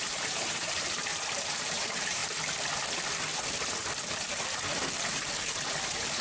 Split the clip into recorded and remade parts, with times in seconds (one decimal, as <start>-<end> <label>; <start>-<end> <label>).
0.0-1.1 remade; 1.1-1.7 recorded; 1.7-2.2 remade; 2.2-5.7 recorded; 5.7-6.2 remade